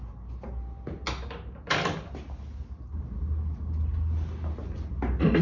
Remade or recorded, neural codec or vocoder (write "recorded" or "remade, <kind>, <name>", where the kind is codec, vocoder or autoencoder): recorded